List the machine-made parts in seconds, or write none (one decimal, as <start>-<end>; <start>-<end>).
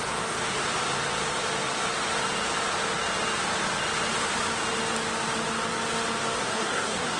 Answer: 6.4-7.2